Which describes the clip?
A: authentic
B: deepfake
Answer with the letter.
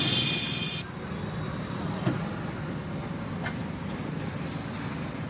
A